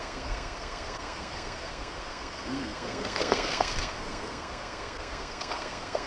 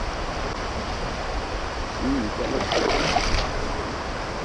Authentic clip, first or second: second